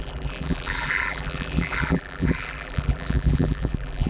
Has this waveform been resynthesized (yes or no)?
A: yes